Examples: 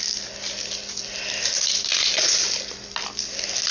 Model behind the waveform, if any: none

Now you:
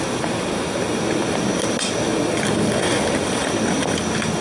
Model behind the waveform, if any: none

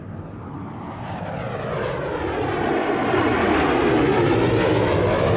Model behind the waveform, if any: none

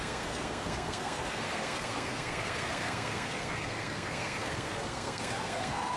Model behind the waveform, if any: codec, SNAC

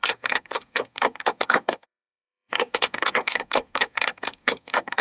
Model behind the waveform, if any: codec, SNAC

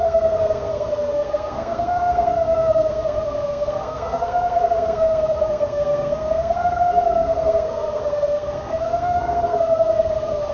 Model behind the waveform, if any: codec, SNAC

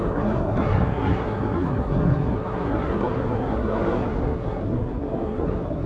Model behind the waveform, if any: codec, SNAC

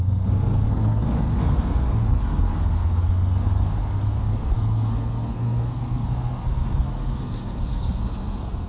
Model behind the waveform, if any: codec, SNAC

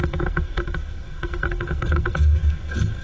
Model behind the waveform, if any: codec, SNAC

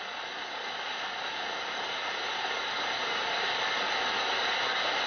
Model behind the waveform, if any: none